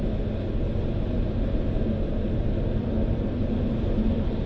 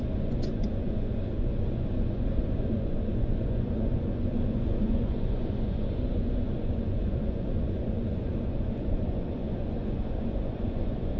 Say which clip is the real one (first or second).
first